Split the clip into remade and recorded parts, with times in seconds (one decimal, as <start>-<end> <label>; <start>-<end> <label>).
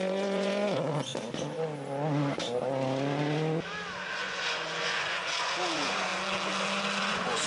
0.0-1.1 remade; 1.1-4.1 recorded; 4.1-6.1 remade; 6.1-7.0 recorded; 7.0-7.5 remade